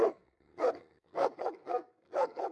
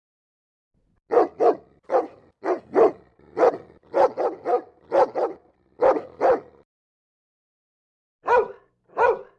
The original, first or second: second